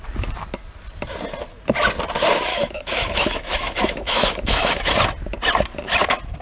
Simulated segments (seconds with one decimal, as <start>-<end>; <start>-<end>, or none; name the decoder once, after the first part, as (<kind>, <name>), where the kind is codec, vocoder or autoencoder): 2.5-4.9 (autoencoder, DAC-VAE)